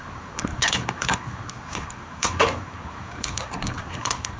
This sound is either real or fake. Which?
fake